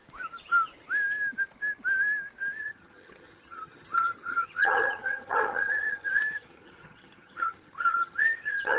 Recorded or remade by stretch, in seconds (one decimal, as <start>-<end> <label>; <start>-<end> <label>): 0.0-2.6 recorded; 2.6-8.8 remade

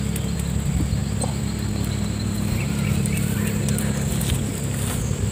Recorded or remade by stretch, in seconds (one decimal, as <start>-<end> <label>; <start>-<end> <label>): 0.0-5.3 recorded

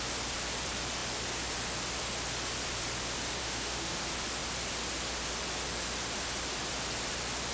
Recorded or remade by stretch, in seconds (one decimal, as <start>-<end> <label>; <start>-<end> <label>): 0.0-3.4 recorded; 3.4-4.0 remade; 4.0-7.5 recorded